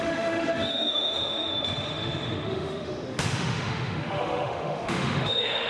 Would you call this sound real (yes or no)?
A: no